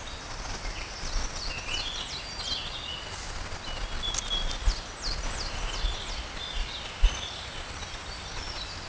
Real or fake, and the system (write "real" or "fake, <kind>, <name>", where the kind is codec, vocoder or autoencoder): real